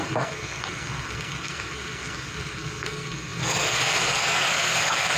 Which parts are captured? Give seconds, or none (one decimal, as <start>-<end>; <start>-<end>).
none